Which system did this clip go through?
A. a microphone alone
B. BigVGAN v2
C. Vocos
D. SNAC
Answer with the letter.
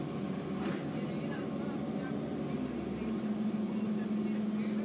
A